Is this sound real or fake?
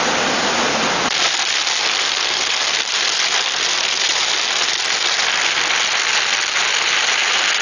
real